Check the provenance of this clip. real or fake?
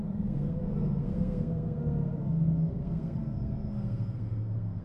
fake